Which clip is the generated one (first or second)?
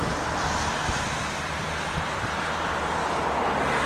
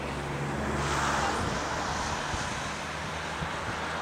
first